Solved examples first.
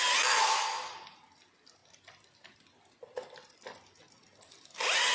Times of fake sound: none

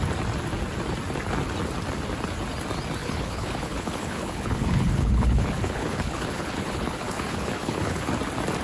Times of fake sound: 3.0-8.1 (codec, HILCodec)

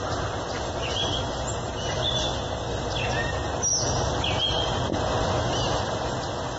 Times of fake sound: none

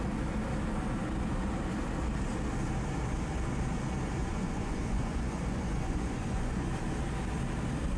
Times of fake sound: 4.2-6.8 (vocoder, Vocos)

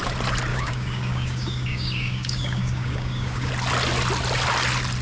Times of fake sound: 0.5-3.5 (codec, DAC)